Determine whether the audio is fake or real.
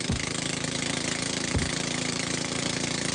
fake